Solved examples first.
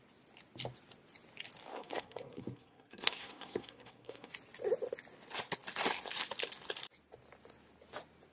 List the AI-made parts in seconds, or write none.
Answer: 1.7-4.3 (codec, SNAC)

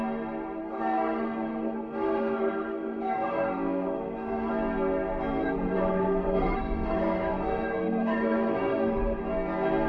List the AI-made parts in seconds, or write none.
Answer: 0.6-4.5 (codec, SNAC); 5.4-9.2

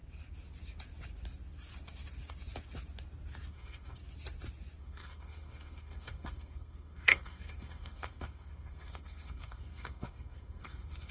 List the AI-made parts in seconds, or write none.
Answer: 3.5-4.0 (codec, SNAC); 4.8-11.1